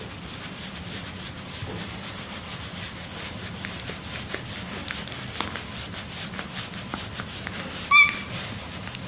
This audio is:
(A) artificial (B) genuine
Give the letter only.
B